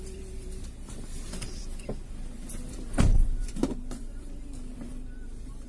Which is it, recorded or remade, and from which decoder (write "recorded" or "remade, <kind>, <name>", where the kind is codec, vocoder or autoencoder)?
remade, vocoder, BigVGAN v2